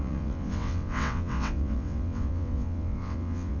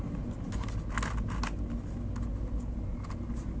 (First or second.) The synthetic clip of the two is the first